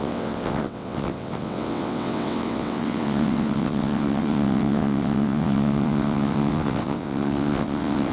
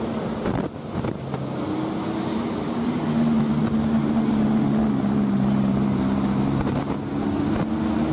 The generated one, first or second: first